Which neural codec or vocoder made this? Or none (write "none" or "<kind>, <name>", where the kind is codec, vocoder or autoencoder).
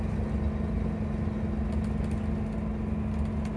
none